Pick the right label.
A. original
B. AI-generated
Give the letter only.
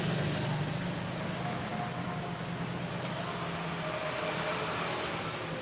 A